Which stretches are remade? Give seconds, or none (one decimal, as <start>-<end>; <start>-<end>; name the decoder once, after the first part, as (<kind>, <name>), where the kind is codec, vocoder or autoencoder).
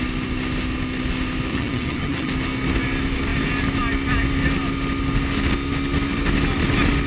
1.5-2.3 (vocoder, HiFi-GAN)